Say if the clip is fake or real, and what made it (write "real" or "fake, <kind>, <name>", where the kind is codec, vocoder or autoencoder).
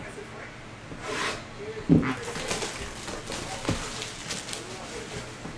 real